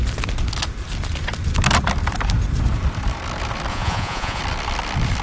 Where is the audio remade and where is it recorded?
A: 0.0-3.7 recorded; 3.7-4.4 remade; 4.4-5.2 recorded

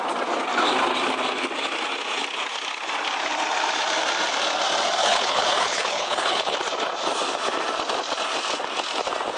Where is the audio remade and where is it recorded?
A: 0.0-5.0 recorded; 5.0-6.6 remade; 6.6-9.4 recorded

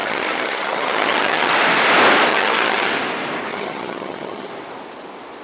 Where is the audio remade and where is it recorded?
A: 0.0-1.5 remade; 1.5-2.3 recorded; 2.3-2.9 remade; 2.9-3.5 recorded; 3.5-4.5 remade; 4.5-5.4 recorded